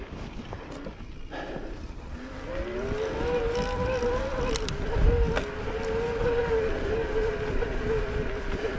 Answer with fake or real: real